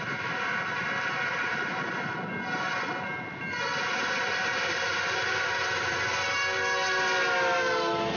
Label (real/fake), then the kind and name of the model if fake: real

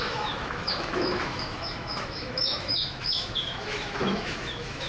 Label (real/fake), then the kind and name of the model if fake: fake, autoencoder, DAC-VAE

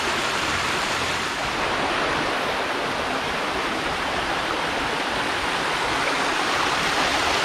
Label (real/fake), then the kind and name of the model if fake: real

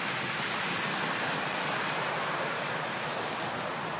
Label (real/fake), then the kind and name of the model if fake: real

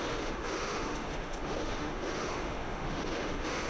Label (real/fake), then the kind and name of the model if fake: fake, autoencoder, DAC-VAE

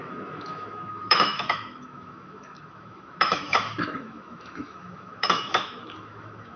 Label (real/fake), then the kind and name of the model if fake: fake, autoencoder, DAC-VAE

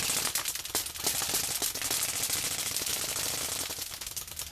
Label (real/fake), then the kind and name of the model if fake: real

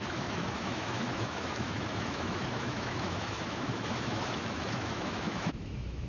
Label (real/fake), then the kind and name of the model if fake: fake, autoencoder, DAC-VAE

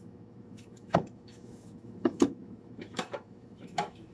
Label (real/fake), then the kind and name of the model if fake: fake, autoencoder, DAC-VAE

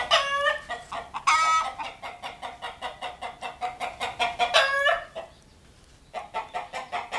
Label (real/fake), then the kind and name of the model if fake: real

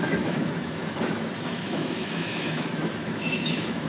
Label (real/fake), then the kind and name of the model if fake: fake, autoencoder, DAC-VAE